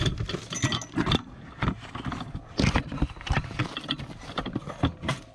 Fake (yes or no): no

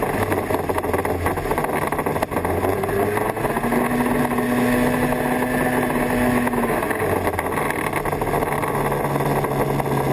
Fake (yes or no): no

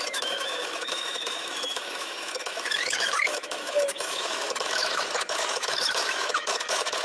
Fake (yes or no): yes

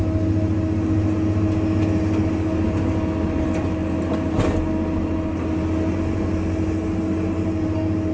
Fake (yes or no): no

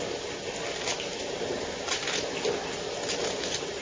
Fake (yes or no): no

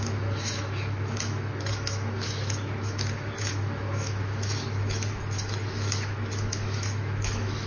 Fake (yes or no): yes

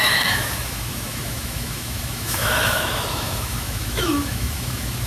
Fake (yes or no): yes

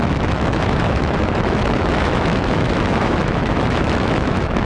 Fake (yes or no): yes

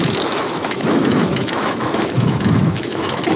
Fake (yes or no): yes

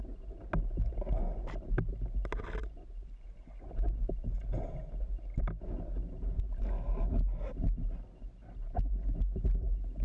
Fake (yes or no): no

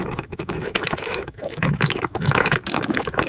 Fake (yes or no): yes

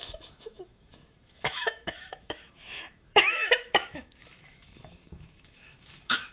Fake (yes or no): yes